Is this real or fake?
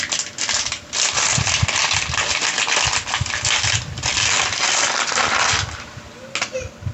real